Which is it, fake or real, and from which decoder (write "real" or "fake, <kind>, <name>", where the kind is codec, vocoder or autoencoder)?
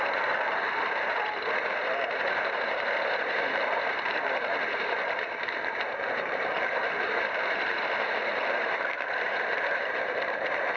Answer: fake, vocoder, BigVGAN v2